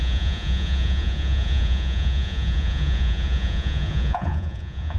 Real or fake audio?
fake